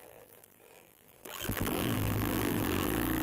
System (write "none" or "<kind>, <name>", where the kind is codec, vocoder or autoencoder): vocoder, BigVGAN v2